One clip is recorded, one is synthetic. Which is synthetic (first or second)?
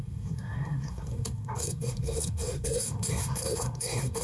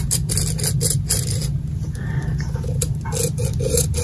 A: first